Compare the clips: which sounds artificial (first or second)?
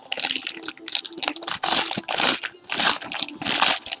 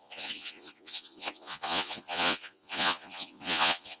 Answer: second